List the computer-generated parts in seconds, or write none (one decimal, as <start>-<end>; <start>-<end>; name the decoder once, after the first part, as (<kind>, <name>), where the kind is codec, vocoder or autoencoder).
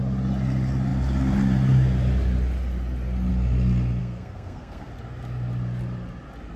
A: 4.0-4.9 (codec, SNAC)